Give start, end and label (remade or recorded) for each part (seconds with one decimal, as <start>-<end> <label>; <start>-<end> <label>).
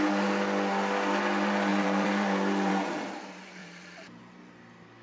0.0-1.7 recorded; 1.7-2.7 remade; 2.7-3.6 recorded; 3.6-4.2 remade; 4.2-5.0 recorded